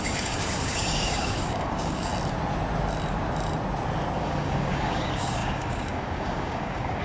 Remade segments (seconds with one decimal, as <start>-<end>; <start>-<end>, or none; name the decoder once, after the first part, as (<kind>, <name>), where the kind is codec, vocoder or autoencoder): 0.0-2.1 (codec, DAC); 4.2-7.0